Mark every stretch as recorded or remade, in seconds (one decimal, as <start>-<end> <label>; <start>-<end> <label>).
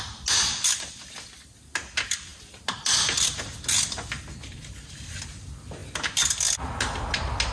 0.0-7.5 recorded